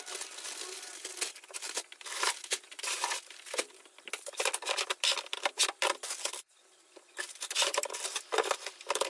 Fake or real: real